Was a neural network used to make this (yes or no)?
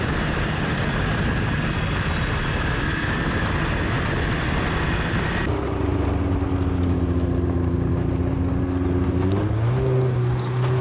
no